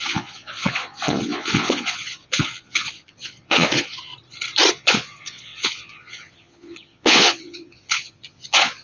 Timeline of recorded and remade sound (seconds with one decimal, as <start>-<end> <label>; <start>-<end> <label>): 0.0-4.1 remade; 4.1-4.7 recorded; 4.7-8.8 remade